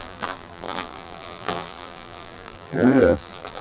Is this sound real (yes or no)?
no